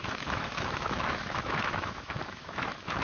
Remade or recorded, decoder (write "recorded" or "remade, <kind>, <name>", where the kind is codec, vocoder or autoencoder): remade, autoencoder, DAC-VAE